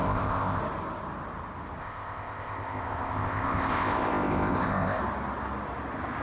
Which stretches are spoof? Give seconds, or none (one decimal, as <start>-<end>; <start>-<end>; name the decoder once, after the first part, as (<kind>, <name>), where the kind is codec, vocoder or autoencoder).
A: 0.0-0.6 (codec, ZipCodec); 1.8-5.0